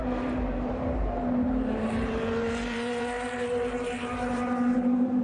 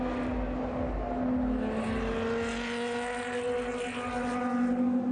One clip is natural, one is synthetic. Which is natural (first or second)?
second